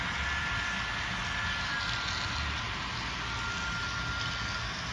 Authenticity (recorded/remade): recorded